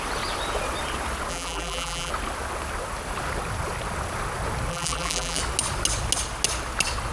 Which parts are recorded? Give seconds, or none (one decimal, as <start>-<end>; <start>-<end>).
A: 0.0-1.3; 2.1-4.7; 5.4-7.1